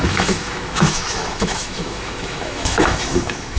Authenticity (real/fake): fake